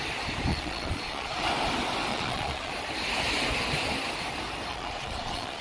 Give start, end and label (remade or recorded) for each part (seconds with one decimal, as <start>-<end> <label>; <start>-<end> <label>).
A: 0.0-0.5 recorded; 0.5-1.4 remade; 1.4-2.1 recorded; 2.1-2.7 remade; 2.7-4.7 recorded; 4.7-5.6 remade

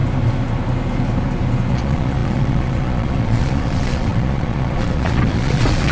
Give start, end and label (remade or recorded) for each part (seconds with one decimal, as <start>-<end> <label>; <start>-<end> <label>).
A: 0.0-1.7 recorded; 1.7-5.9 remade

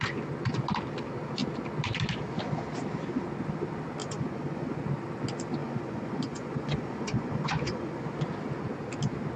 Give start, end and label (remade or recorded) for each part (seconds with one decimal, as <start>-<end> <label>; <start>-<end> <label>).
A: 0.0-4.0 recorded; 4.0-4.8 remade; 4.8-5.6 recorded; 5.6-8.0 remade; 8.0-9.4 recorded

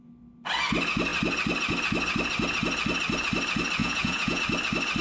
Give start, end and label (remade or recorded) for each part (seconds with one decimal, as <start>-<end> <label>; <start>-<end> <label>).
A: 0.0-3.8 recorded; 3.8-4.4 remade; 4.4-5.0 recorded

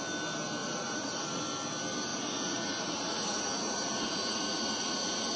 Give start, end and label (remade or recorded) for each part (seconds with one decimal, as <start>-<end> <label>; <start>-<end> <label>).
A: 0.0-0.6 recorded; 0.6-1.4 remade; 1.4-2.1 recorded; 2.1-5.4 remade